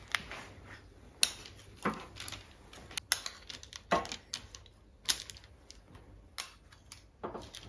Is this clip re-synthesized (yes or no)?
no